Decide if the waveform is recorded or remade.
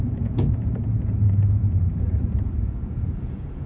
remade